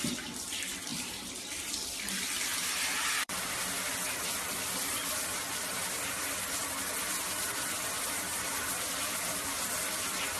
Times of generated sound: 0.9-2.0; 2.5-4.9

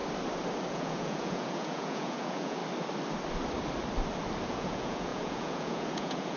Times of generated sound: 0.7-2.6; 4.5-6.4